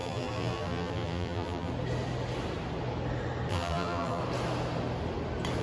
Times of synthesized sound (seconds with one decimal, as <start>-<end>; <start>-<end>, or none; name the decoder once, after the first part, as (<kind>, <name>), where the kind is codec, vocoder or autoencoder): 0.0-1.7 (vocoder, BigVGAN v2); 3.5-4.2